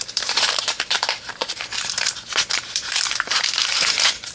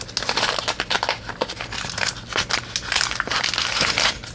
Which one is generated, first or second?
first